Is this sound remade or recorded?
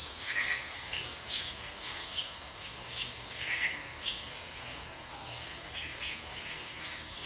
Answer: remade